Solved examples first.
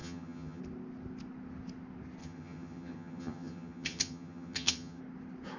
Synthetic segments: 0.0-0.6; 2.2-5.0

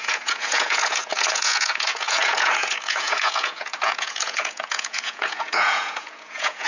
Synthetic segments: 0.0-6.7

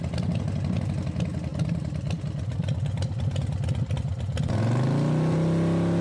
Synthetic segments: 1.5-2.1; 2.5-3.4

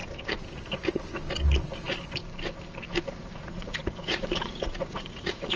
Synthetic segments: 3.4-5.6

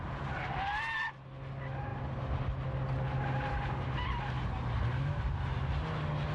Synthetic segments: none